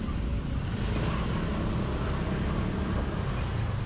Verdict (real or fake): real